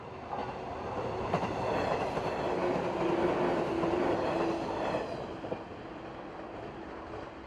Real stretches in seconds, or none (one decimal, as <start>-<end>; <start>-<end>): 0.0-7.5

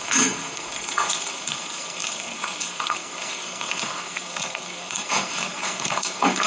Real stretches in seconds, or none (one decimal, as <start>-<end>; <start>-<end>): none